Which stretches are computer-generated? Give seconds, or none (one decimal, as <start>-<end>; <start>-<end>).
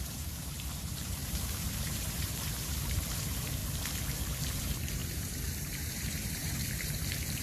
0.0-3.6; 4.6-7.4